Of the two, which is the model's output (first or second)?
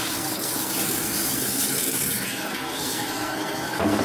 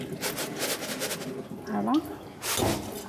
first